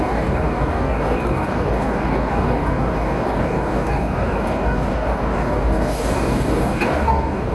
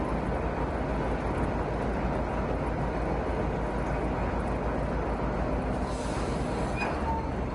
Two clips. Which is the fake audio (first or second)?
first